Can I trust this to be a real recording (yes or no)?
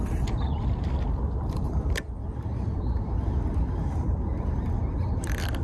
yes